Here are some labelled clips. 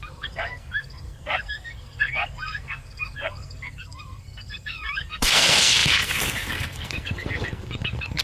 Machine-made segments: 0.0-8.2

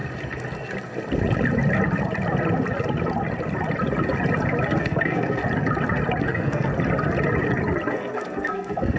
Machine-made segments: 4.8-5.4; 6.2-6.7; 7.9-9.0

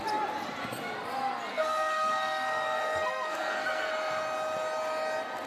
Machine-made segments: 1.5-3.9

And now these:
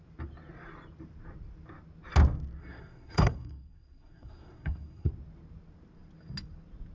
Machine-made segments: 2.6-5.1

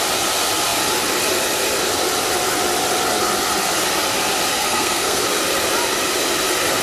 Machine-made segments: 4.5-5.2

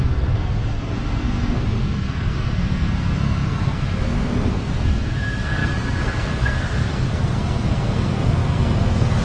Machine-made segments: 0.0-9.2